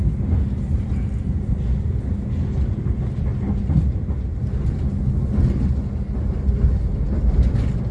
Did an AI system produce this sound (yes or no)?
no